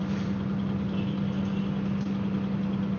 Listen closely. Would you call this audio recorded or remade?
recorded